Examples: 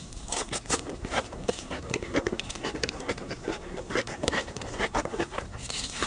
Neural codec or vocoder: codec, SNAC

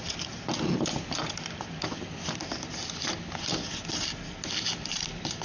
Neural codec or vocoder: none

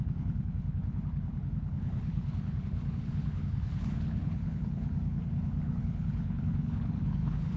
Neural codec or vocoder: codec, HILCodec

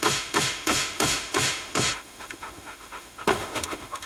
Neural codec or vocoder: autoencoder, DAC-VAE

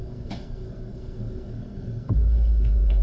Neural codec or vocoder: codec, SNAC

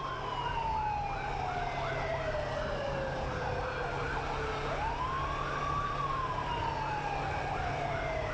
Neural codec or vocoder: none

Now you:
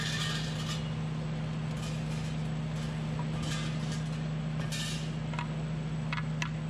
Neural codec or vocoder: none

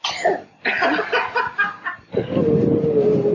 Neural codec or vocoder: none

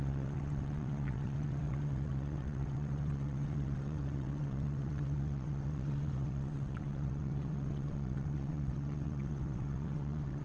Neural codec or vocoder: vocoder, WaveNeXt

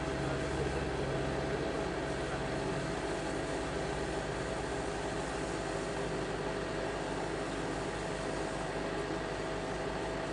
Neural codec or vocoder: none